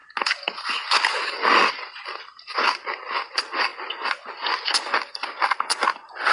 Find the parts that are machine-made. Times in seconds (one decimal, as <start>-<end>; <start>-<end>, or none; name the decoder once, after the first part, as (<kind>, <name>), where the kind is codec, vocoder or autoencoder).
none